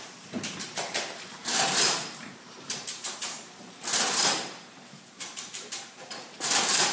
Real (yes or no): no